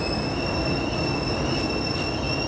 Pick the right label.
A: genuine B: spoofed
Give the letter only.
A